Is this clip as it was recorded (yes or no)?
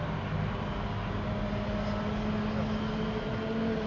yes